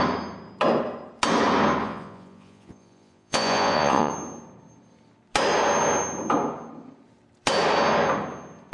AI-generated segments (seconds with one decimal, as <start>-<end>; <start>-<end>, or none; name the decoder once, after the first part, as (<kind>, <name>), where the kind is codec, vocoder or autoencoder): 1.8-4.1 (vocoder, Vocos)